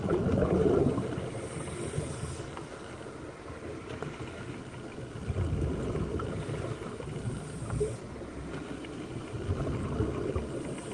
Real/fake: real